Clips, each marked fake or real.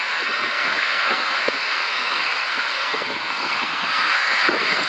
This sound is fake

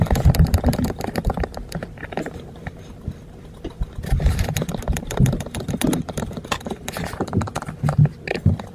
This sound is real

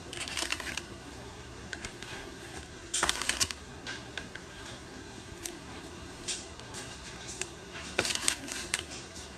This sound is fake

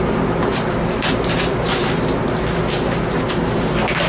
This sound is real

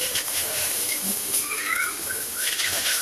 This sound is fake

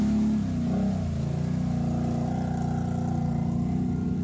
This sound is real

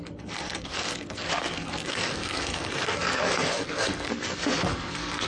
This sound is fake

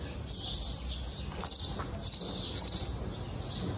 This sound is real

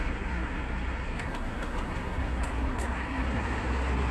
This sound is fake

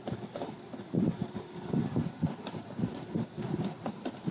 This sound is real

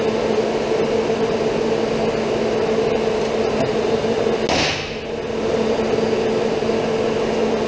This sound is real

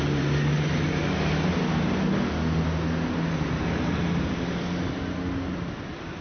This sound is real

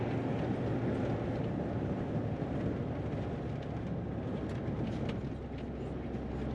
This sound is real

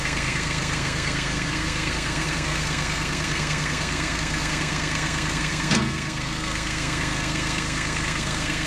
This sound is fake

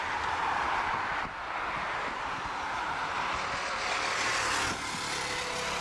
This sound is real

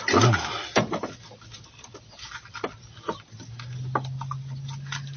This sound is real